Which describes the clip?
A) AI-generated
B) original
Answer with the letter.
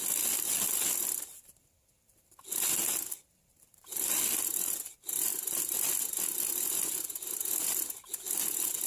B